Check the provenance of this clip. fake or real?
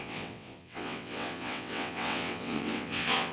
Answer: fake